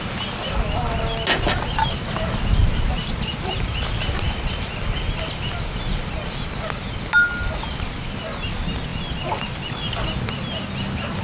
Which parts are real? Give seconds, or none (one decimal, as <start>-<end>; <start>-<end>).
0.0-2.6; 4.7-11.2